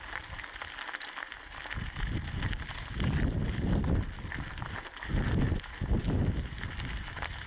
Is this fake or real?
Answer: real